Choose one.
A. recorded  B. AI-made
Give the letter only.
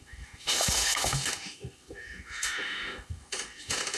B